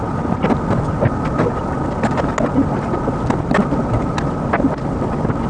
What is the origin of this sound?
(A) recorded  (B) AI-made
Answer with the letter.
A